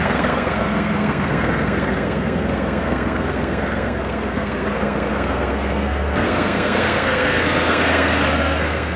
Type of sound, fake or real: fake